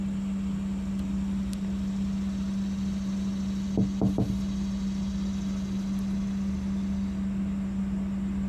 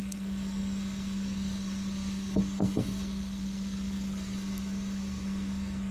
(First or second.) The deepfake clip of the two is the second